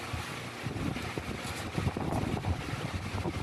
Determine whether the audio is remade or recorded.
recorded